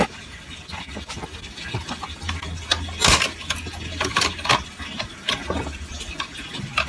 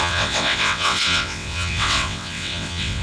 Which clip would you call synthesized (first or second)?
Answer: second